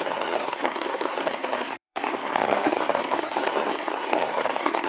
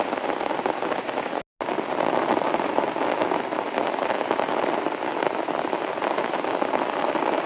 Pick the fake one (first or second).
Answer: first